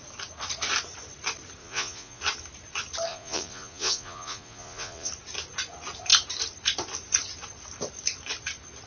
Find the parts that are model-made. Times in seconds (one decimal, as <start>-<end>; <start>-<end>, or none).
1.6-2.2; 3.1-5.1